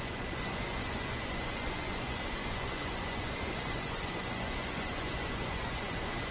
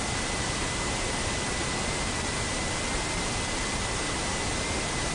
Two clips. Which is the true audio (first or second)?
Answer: second